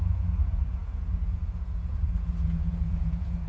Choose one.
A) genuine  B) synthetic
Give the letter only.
B